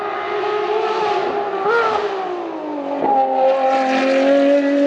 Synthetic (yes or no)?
no